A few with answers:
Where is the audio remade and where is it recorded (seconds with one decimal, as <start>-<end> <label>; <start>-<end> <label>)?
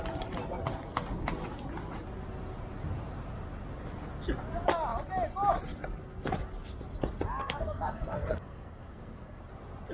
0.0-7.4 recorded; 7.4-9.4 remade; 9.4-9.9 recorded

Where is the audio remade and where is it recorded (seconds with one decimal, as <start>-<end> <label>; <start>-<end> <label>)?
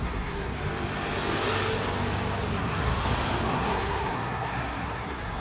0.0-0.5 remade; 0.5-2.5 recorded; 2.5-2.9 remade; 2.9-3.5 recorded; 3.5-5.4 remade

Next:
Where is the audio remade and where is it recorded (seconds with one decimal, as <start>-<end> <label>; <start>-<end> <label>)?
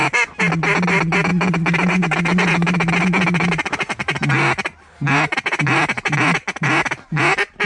0.0-7.7 recorded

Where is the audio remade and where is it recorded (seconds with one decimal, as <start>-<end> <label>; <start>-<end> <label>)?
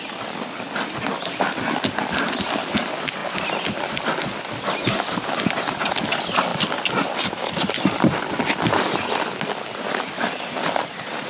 0.0-11.3 recorded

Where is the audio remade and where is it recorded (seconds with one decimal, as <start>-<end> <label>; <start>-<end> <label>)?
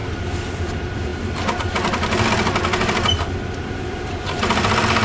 0.0-5.0 recorded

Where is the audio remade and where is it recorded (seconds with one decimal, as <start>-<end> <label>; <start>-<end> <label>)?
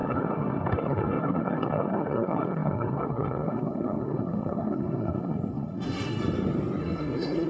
0.0-6.2 remade; 6.2-6.8 recorded; 6.8-7.5 remade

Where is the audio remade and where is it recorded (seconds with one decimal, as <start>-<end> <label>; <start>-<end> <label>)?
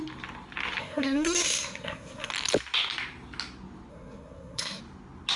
0.0-0.8 recorded; 0.8-2.3 remade; 2.3-3.9 recorded; 3.9-4.8 remade; 4.8-5.4 recorded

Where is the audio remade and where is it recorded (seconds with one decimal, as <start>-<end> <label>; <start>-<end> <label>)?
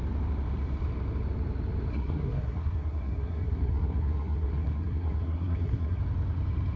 0.0-1.9 recorded; 1.9-6.0 remade; 6.0-6.8 recorded